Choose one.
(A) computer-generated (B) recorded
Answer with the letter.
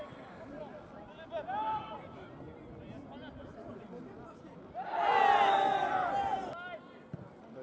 B